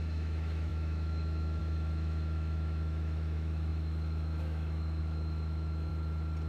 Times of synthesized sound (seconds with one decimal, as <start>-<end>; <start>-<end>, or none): 0.0-5.9